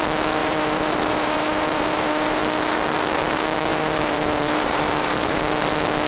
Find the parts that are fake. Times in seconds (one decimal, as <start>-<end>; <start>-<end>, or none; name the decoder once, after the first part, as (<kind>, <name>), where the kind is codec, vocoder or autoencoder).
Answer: 0.4-2.4 (vocoder, BigVGAN v2); 3.7-5.4